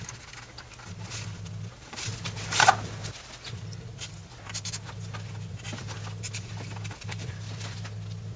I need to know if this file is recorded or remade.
recorded